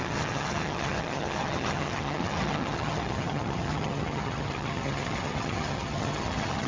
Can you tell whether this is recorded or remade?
remade